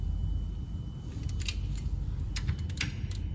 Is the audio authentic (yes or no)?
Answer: no